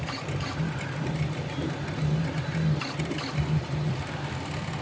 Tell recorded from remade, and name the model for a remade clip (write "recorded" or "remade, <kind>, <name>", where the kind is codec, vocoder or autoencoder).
recorded